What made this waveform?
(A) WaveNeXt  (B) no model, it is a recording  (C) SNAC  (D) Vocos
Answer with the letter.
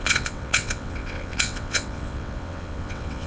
A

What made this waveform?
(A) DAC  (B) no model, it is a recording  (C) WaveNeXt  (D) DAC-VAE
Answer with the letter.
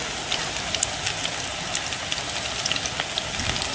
B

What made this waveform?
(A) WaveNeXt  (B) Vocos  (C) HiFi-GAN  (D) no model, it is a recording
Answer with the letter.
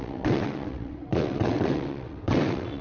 A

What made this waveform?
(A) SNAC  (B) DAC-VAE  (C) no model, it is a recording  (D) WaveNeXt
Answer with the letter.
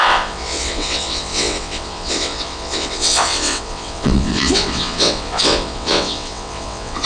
D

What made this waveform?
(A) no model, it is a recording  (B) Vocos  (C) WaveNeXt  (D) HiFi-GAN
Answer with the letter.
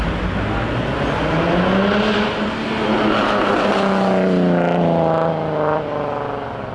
A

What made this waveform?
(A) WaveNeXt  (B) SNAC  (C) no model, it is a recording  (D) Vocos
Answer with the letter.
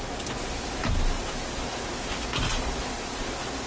C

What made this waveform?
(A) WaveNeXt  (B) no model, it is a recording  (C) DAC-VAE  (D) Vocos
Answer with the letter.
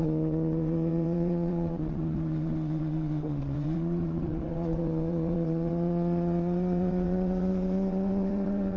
A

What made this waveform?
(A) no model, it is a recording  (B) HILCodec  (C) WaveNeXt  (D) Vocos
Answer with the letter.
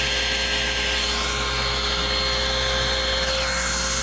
A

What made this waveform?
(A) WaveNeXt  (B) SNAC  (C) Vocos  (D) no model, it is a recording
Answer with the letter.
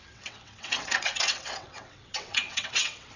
A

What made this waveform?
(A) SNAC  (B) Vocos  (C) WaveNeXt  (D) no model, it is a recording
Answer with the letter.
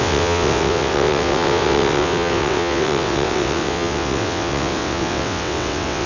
C